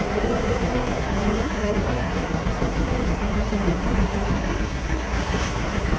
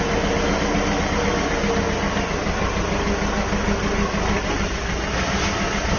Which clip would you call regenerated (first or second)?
first